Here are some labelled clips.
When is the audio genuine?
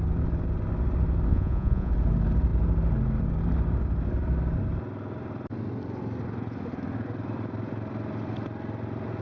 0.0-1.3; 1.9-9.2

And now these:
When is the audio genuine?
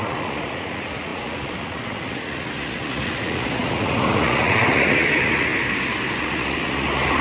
5.5-6.2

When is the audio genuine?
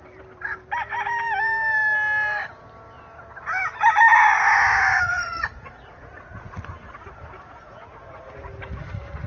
0.0-4.9; 8.3-9.3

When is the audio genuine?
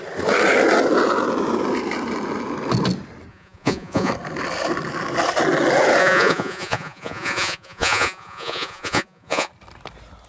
0.0-3.3; 4.1-6.0; 9.5-10.3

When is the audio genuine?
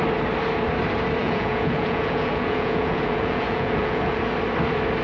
0.0-1.2; 4.2-5.0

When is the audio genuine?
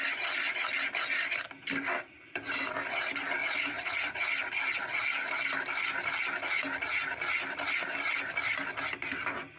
0.0-3.4; 4.2-9.6